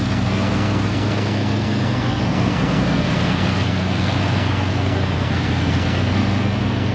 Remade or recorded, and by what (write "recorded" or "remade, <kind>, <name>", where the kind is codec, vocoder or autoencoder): remade, codec, SNAC